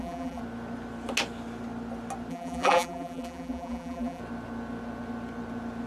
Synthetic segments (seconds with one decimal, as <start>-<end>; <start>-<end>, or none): 0.0-0.4; 2.3-4.2